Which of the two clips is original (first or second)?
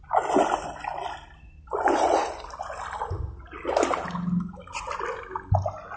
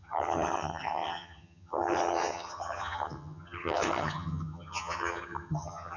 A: first